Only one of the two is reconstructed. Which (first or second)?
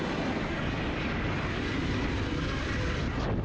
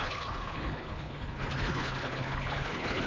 second